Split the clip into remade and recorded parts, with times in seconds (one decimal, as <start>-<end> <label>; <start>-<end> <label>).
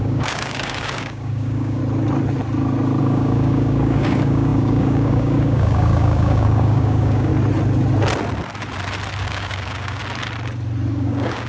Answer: 0.0-1.8 remade; 1.8-3.0 recorded; 3.0-7.3 remade; 7.3-9.2 recorded; 9.2-10.0 remade; 10.0-10.9 recorded; 10.9-11.5 remade